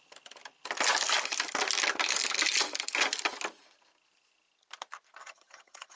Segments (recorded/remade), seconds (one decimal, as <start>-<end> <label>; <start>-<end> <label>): 0.0-5.2 recorded; 5.2-6.0 remade